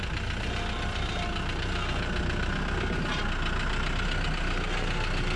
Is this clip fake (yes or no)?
no